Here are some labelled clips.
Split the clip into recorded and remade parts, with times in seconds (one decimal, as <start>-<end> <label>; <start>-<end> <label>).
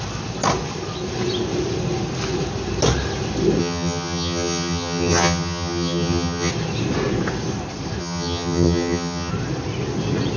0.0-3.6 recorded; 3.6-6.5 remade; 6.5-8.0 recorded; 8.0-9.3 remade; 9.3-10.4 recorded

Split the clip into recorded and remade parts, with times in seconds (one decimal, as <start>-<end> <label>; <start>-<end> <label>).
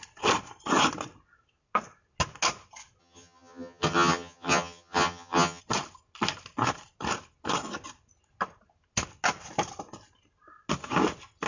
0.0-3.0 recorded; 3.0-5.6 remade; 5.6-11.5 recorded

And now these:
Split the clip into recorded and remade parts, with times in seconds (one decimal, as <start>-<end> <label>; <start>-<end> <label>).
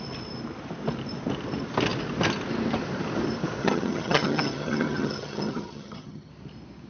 0.0-3.6 recorded; 3.6-6.3 remade; 6.3-6.9 recorded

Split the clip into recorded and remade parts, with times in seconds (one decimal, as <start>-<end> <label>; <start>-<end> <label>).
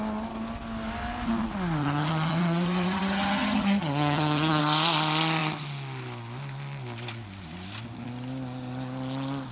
0.0-1.8 recorded; 1.8-4.6 remade; 4.6-9.5 recorded